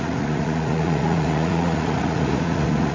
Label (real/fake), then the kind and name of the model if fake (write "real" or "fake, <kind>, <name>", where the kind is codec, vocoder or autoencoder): fake, vocoder, Vocos